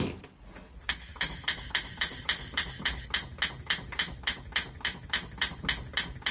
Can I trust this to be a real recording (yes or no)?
yes